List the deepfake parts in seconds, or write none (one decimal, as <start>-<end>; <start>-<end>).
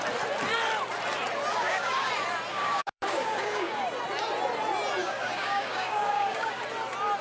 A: 1.5-2.1; 2.5-3.7; 5.0-6.6